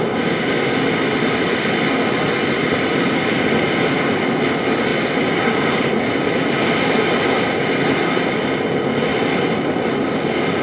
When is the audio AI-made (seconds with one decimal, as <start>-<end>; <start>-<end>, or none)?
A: 4.9-6.1